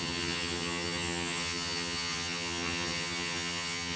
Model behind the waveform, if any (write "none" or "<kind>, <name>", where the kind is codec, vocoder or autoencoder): vocoder, HiFi-GAN